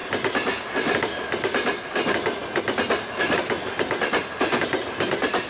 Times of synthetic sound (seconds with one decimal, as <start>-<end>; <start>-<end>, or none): none